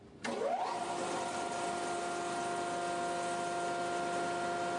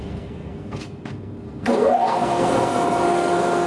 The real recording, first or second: first